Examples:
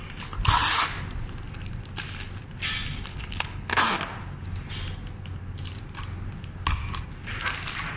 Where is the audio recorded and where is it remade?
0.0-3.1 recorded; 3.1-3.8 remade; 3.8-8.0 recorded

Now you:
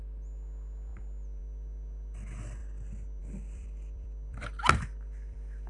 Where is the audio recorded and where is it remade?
0.0-2.6 remade; 2.6-3.2 recorded; 3.2-5.7 remade

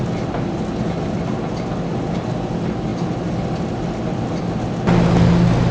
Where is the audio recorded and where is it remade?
0.0-5.7 recorded

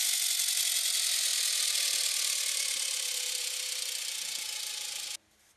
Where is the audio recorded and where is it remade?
0.0-5.6 recorded

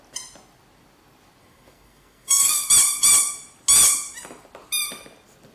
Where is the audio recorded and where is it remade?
0.0-1.4 recorded; 1.4-2.7 remade; 2.7-5.5 recorded

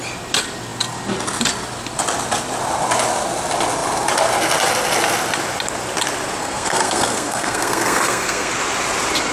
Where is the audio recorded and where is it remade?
0.0-6.4 recorded; 6.4-8.5 remade; 8.5-9.3 recorded

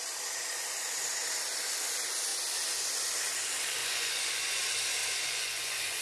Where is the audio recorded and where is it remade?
0.0-3.8 recorded; 3.8-4.6 remade; 4.6-5.0 recorded; 5.0-6.0 remade